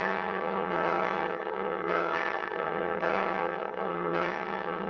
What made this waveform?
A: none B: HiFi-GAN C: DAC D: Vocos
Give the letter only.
B